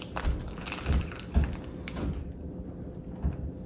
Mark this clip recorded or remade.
recorded